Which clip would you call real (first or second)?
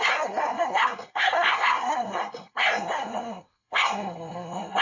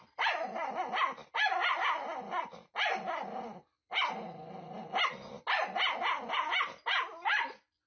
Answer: second